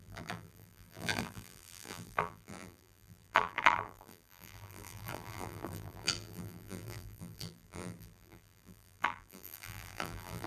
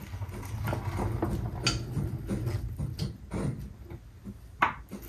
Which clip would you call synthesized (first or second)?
first